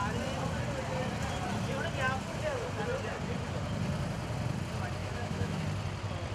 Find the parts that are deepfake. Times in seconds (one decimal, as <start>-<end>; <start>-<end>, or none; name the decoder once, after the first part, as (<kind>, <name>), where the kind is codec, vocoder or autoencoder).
5.0-5.6 (autoencoder, DAC-VAE)